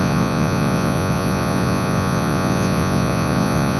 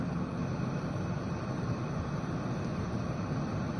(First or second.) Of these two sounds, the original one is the second